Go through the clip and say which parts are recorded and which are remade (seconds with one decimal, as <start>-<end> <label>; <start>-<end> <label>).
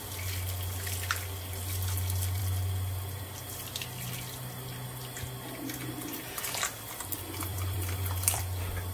0.0-7.5 recorded; 7.5-8.4 remade; 8.4-8.9 recorded